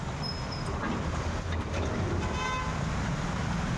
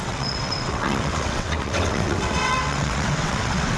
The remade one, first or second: second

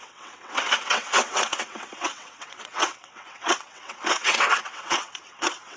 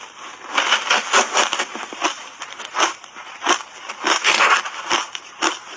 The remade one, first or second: first